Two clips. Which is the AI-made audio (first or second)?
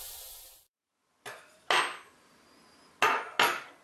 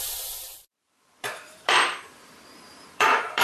second